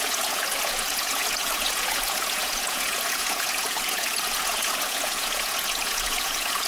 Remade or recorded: remade